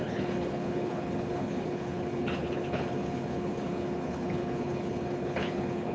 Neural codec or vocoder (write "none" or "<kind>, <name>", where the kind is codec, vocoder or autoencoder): codec, HILCodec